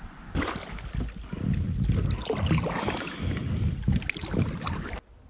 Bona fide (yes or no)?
yes